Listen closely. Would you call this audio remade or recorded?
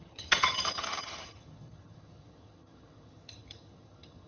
remade